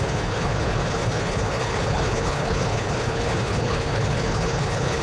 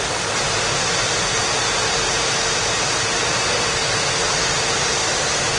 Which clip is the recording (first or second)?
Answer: second